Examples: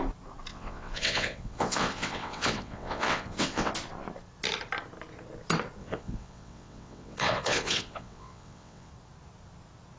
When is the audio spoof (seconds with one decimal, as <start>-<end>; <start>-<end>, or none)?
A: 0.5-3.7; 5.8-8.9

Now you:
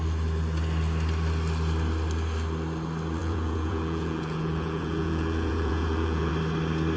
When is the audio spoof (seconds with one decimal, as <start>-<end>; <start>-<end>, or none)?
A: 3.2-6.3

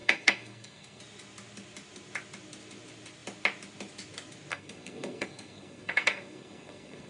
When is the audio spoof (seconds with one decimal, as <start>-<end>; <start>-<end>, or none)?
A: 0.0-1.0; 4.5-7.1

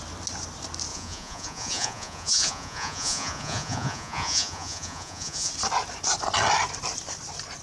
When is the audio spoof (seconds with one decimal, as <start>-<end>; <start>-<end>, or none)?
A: 0.9-5.5